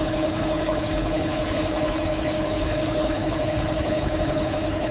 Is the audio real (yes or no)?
no